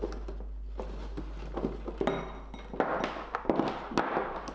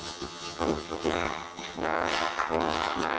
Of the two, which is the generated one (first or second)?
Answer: second